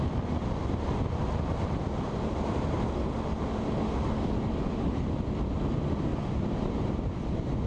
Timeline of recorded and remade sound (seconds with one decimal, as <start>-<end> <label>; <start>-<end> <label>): 0.0-6.1 recorded; 6.1-7.3 remade; 7.3-7.7 recorded